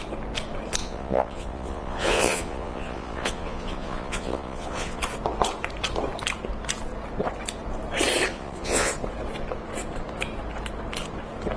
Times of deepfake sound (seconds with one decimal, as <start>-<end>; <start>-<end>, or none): 0.8-5.0; 8.3-8.9